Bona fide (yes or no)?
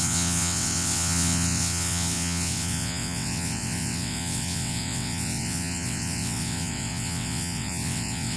no